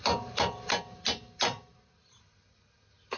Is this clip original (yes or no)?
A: yes